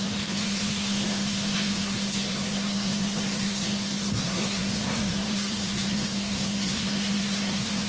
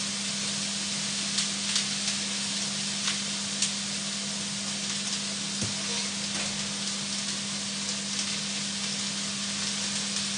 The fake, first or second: first